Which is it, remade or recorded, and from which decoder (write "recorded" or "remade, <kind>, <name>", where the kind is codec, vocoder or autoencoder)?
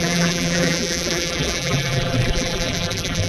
remade, vocoder, BigVGAN v2